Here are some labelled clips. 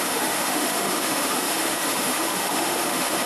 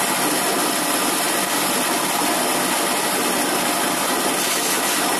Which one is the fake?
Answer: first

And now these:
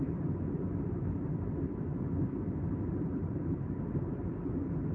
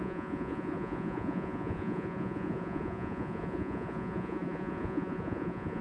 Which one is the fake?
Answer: second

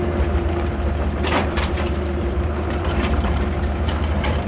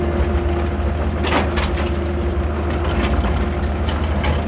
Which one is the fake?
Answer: first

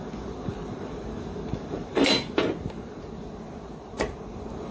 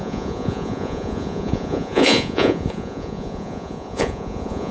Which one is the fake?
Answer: second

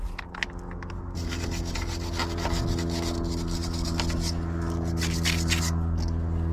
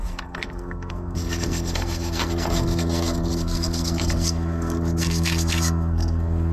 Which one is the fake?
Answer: second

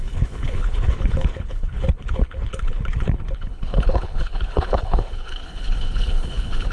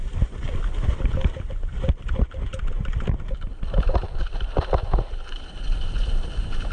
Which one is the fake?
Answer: first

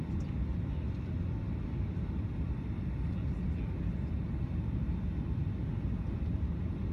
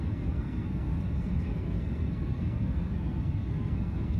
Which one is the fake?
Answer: second